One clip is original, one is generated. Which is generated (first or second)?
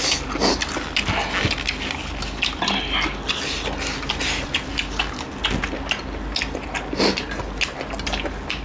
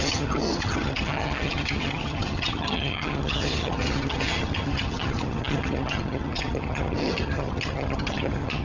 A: second